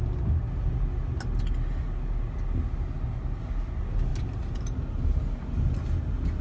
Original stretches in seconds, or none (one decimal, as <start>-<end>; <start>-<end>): 0.0-6.4